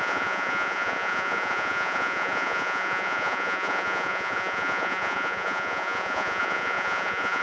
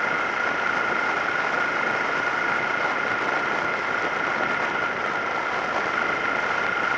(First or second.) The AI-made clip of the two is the first